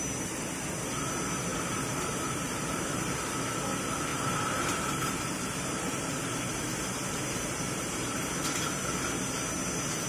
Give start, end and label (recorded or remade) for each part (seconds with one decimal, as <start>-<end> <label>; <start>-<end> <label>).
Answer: 0.0-1.5 recorded; 1.5-3.0 remade; 3.0-4.1 recorded; 4.1-8.3 remade; 8.3-10.1 recorded